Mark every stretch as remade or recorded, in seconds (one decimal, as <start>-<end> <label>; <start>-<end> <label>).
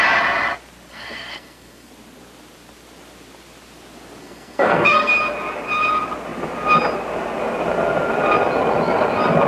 0.0-0.9 recorded; 0.9-1.9 remade; 1.9-4.2 recorded; 4.2-5.1 remade; 5.1-9.5 recorded